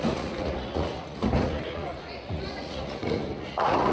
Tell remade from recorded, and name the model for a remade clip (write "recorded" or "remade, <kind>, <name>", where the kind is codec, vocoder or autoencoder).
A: remade, vocoder, Vocos